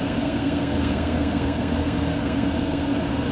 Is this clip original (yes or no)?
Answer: no